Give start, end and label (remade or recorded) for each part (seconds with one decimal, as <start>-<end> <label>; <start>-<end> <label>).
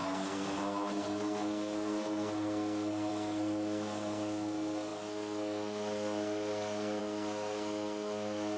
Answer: 0.0-8.6 remade